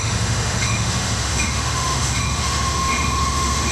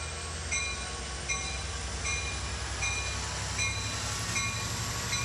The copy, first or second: first